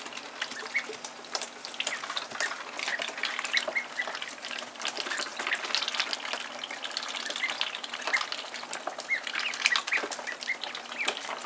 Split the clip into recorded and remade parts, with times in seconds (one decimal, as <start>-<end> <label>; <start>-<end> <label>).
0.0-11.5 recorded